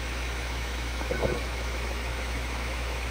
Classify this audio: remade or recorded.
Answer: remade